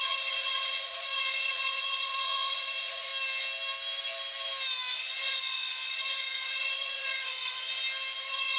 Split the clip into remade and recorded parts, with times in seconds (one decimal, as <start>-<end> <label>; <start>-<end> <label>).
0.0-3.1 remade; 3.1-4.9 recorded; 4.9-7.7 remade; 7.7-8.2 recorded; 8.2-8.6 remade